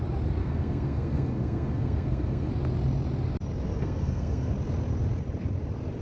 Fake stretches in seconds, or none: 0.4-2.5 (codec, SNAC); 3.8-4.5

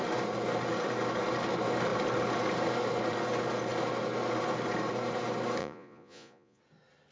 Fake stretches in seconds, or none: 5.6-6.6 (vocoder, Vocos)

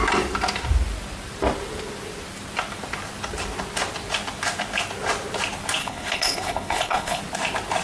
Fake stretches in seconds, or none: 5.8-7.2 (codec, HILCodec)

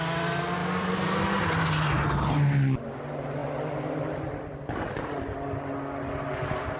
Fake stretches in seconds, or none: 0.6-1.1 (vocoder, BigVGAN v2)

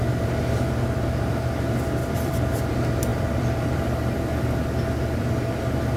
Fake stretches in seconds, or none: 2.0-2.6 (vocoder, BigVGAN v2); 3.1-4.6